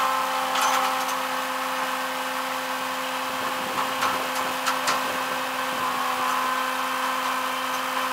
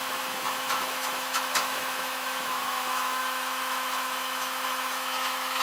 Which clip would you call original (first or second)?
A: first